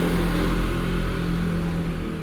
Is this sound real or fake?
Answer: real